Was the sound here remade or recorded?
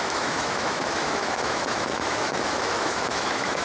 remade